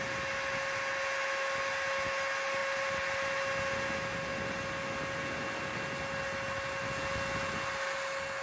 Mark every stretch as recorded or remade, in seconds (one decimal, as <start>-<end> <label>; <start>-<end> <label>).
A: 0.0-8.4 recorded